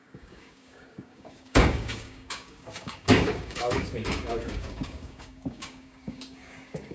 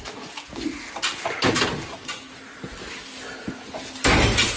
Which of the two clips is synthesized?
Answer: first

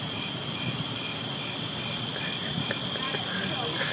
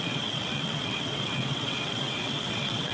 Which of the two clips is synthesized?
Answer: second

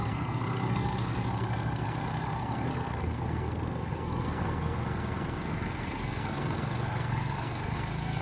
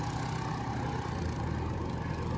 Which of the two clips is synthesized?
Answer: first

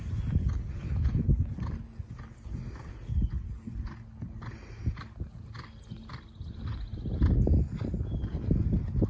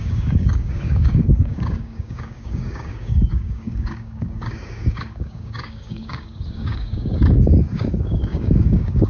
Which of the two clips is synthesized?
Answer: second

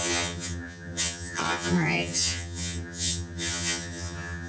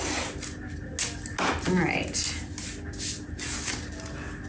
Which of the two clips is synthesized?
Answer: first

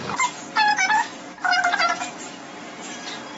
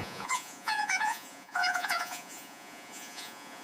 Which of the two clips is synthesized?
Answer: second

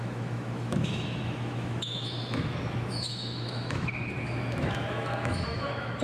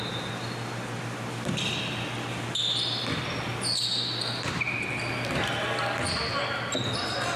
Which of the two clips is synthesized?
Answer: first